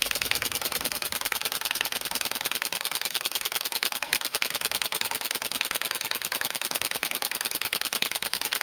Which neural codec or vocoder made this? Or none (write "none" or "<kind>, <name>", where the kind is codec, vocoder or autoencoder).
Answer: codec, SNAC